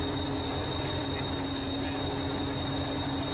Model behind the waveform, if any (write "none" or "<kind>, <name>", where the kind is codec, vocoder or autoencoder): none